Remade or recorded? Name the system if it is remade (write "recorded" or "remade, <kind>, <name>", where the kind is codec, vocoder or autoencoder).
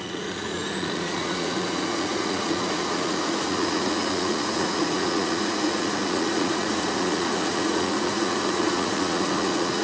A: remade, vocoder, Vocos